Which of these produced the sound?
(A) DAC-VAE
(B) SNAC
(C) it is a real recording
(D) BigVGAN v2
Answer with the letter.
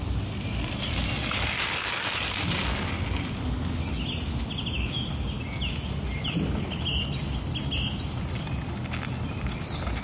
C